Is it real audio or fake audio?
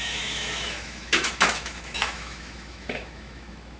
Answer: fake